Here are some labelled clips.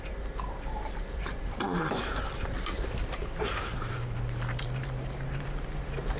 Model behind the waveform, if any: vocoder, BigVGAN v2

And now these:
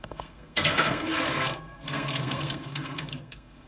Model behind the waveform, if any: codec, SNAC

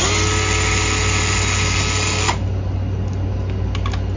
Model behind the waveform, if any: none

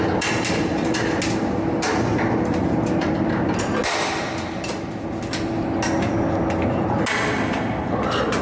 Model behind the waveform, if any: none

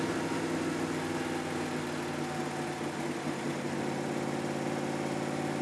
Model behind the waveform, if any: none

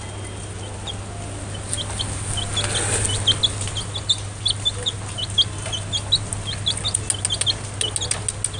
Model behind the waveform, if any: none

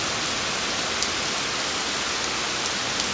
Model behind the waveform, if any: none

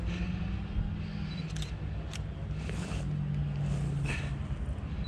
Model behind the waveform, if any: none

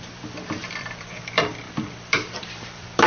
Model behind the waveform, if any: vocoder, BigVGAN v2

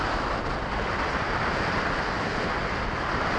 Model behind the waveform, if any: none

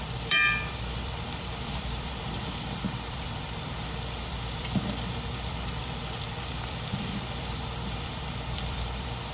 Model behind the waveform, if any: vocoder, BigVGAN v2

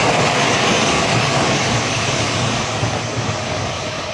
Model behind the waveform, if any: codec, DAC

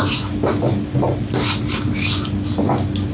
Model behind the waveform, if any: none